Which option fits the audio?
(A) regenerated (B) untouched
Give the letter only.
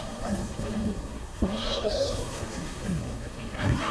A